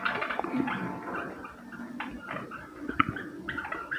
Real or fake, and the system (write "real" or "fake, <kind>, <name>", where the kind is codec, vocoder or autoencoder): real